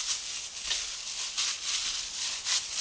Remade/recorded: recorded